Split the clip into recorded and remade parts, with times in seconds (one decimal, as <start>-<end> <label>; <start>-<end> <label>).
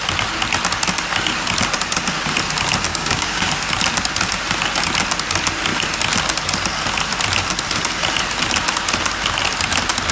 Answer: 0.0-2.9 recorded; 2.9-3.5 remade; 3.5-10.1 recorded